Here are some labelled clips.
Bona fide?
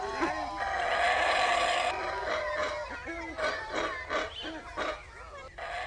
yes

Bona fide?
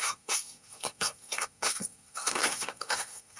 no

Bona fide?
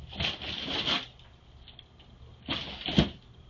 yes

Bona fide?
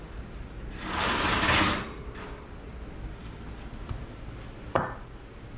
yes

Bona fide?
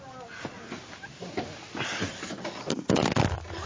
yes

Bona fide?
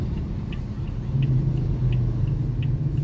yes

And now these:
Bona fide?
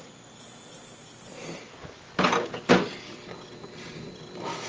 yes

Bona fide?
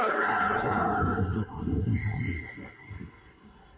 no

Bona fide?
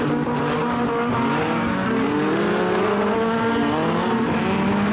yes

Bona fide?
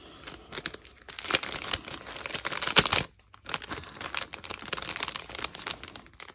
yes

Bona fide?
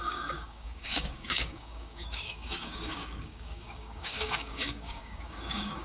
no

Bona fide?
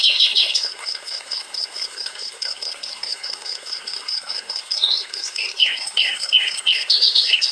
no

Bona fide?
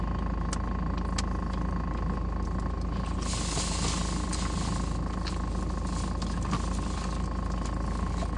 yes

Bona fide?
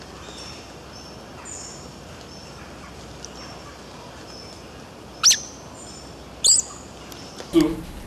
yes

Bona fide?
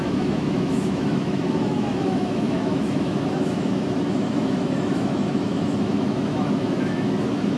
no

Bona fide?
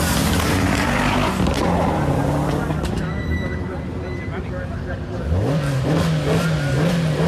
yes